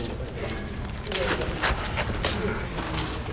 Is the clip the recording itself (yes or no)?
yes